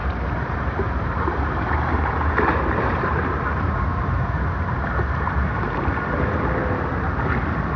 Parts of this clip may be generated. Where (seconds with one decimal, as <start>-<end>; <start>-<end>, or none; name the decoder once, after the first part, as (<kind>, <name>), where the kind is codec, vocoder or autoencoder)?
0.0-3.7 (vocoder, BigVGAN v2)